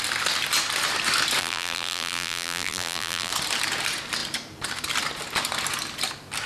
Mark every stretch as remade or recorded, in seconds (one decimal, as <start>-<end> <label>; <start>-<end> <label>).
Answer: 0.0-1.4 recorded; 1.4-3.3 remade; 3.3-6.5 recorded